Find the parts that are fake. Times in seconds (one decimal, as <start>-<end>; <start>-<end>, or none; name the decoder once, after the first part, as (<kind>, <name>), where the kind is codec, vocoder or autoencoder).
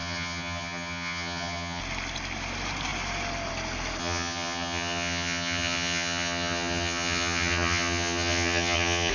0.0-1.8 (vocoder, HiFi-GAN); 4.0-9.1